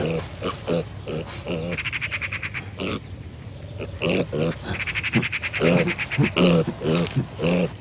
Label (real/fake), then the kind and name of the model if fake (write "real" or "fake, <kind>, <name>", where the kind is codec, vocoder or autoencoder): real